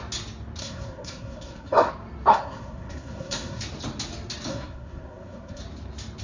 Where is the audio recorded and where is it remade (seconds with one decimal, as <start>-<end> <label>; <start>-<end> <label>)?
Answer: 0.0-0.6 recorded; 0.6-1.9 remade; 1.9-2.3 recorded; 2.3-3.6 remade; 3.6-4.5 recorded; 4.5-5.6 remade; 5.6-6.2 recorded